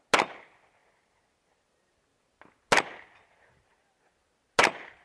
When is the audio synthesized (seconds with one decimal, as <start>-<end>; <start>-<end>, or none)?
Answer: none